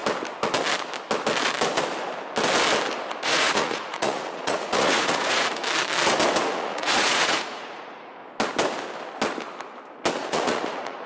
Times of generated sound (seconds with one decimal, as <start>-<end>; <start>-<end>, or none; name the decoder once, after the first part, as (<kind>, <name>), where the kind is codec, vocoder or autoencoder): 3.2-5.6 (vocoder, Vocos); 6.5-8.2; 10.1-11.1